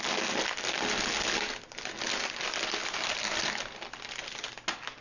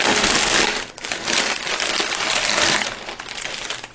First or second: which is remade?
second